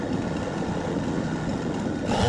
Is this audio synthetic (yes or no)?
no